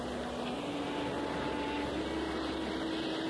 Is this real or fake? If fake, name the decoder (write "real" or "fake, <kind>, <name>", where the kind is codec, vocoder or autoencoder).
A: real